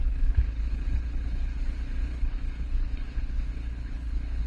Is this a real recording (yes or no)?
no